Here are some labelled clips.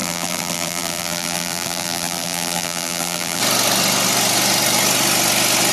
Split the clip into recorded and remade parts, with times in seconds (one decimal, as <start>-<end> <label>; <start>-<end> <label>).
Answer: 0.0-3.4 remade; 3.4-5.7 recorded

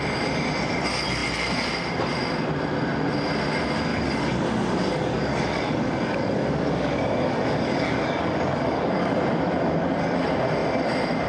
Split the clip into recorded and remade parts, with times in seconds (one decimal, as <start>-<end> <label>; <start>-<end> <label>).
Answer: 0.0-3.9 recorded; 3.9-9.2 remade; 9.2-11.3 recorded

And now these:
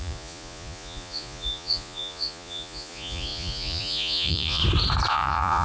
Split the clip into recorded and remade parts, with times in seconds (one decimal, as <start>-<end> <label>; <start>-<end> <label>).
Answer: 0.0-4.6 remade; 4.6-5.1 recorded; 5.1-5.6 remade

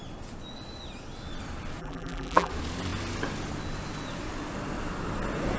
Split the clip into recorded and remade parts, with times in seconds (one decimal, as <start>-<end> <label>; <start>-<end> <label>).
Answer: 0.0-1.8 recorded; 1.8-2.5 remade; 2.5-5.6 recorded

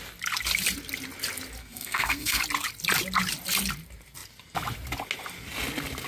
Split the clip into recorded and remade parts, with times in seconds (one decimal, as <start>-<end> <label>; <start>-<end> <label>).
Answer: 0.0-1.6 recorded; 1.6-2.4 remade; 2.4-6.1 recorded

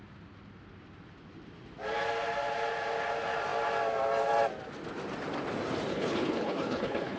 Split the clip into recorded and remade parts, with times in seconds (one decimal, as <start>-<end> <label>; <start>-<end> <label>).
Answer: 0.0-5.9 recorded; 5.9-7.2 remade

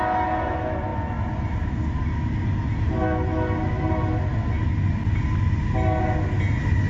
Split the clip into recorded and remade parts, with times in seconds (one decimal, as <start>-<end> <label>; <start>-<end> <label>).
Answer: 0.0-6.9 recorded